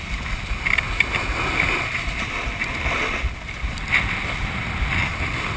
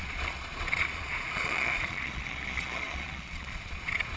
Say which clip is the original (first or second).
first